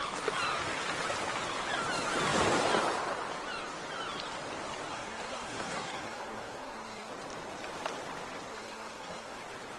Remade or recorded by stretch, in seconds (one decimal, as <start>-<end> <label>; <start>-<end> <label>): 0.0-4.9 recorded; 4.9-7.1 remade; 7.1-8.5 recorded; 8.5-9.4 remade; 9.4-9.8 recorded